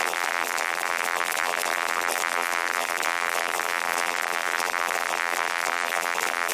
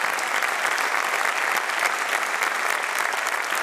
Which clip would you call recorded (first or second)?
second